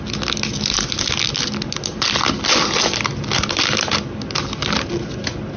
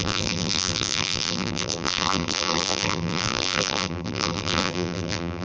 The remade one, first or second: second